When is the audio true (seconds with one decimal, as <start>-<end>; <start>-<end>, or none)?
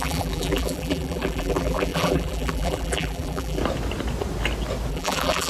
3.6-4.9